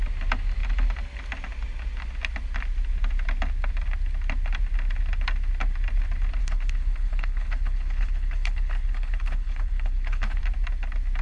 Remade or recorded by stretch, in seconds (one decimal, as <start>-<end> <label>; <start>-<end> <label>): 0.0-6.4 recorded; 6.4-10.4 remade; 10.4-11.2 recorded